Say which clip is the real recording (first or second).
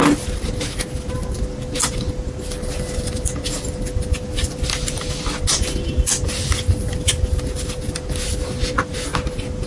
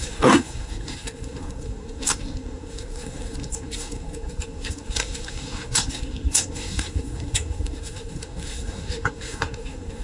first